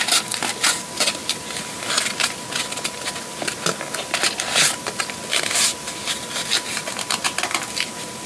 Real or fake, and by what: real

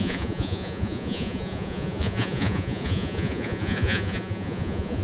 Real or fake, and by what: fake, vocoder, Vocos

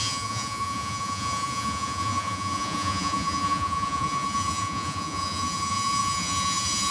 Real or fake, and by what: fake, vocoder, Vocos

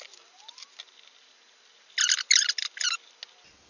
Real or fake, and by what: real